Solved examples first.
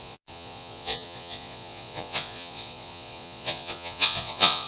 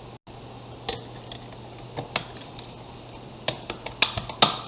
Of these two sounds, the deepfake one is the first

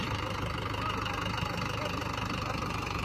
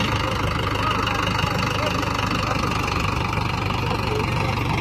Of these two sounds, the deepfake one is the first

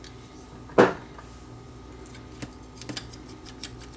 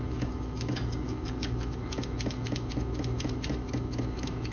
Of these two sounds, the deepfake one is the second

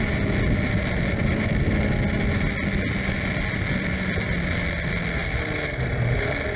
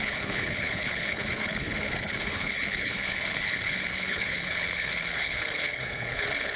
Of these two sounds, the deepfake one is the second